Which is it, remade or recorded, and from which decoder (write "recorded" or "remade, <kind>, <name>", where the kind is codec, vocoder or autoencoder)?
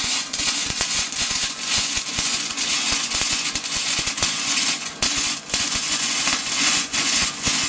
remade, vocoder, Vocos